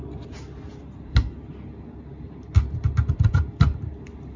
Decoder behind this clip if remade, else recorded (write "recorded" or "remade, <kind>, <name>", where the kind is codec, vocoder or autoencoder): recorded